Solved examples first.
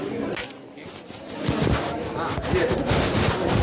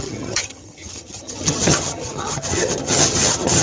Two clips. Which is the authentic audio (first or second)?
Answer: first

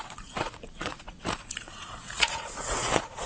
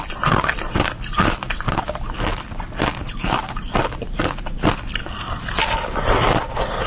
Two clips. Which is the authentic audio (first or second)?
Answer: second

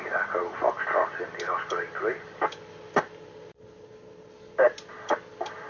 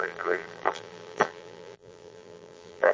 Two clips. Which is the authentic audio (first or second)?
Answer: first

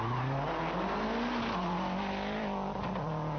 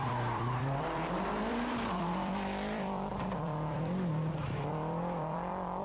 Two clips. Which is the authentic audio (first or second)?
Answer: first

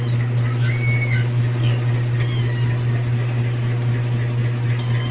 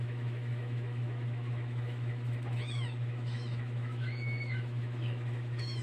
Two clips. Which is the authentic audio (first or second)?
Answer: first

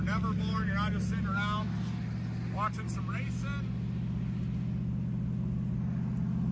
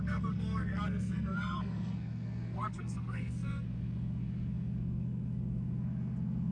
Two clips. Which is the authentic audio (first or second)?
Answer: first